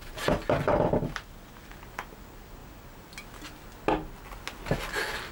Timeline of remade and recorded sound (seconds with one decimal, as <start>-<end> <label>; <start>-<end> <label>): 0.0-5.3 recorded